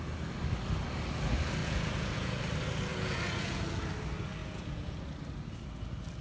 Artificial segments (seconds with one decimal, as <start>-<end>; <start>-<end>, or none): 1.6-2.4; 2.9-3.9; 4.4-5.0